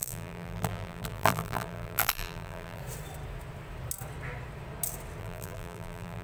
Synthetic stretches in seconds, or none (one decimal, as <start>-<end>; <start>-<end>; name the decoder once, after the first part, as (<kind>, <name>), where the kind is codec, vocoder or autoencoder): 0.0-2.8 (vocoder, BigVGAN v2); 5.2-6.2